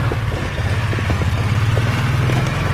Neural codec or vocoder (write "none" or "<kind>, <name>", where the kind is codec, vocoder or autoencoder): none